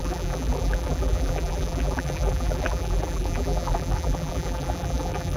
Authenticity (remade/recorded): remade